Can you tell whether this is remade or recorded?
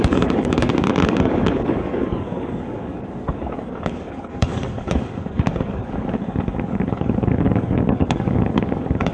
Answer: remade